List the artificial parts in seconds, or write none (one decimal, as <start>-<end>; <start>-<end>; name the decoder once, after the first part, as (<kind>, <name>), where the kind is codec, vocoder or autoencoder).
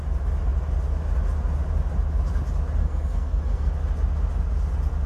2.8-3.7 (codec, SNAC)